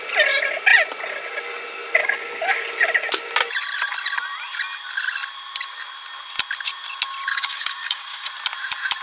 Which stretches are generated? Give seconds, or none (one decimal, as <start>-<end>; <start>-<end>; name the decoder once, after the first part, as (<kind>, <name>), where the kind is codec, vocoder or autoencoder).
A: 2.0-2.6 (codec, DAC); 7.3-8.3